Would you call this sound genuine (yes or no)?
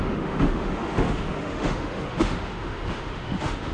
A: no